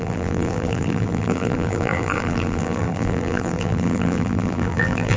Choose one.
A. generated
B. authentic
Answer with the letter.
A